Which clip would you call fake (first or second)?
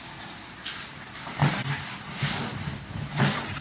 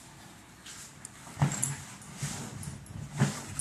first